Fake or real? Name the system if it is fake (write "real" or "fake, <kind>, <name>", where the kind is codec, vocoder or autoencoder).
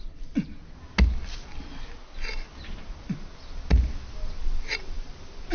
real